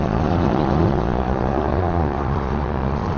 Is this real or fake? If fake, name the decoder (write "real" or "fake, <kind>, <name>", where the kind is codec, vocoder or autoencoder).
fake, vocoder, Vocos